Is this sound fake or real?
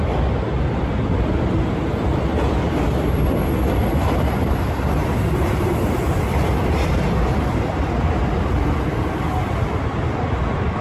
real